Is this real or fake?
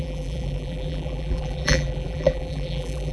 fake